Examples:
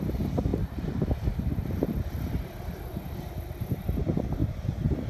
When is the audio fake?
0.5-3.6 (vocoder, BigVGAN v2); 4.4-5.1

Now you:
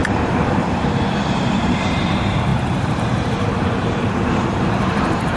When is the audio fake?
0.0-5.4 (vocoder, BigVGAN v2)

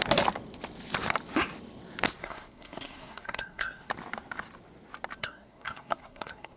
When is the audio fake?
2.2-3.9 (codec, SNAC); 5.2-6.6

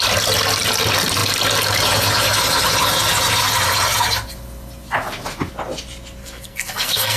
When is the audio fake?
6.2-7.2 (codec, SNAC)

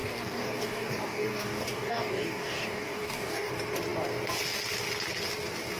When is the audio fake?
0.0-3.5 (codec, DAC)